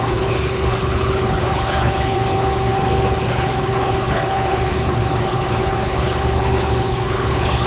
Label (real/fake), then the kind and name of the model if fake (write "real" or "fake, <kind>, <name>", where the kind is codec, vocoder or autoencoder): fake, codec, HILCodec